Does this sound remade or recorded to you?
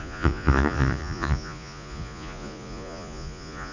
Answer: remade